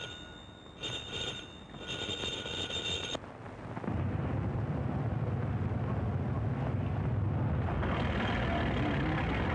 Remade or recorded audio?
recorded